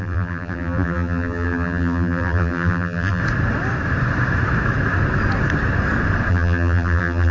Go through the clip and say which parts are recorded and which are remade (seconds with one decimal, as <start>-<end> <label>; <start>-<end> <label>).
0.0-3.2 remade; 3.2-6.3 recorded; 6.3-7.3 remade